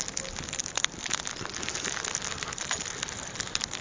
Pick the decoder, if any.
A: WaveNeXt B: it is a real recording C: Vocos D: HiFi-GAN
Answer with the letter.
B